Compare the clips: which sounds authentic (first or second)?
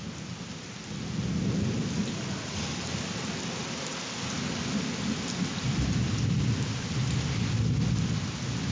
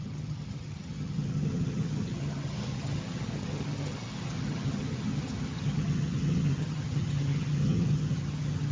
first